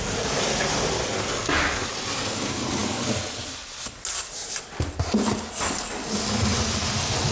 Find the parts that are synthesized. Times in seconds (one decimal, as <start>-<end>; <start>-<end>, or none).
none